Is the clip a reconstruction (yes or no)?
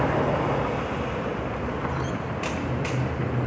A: no